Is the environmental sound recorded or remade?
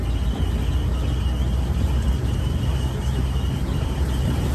recorded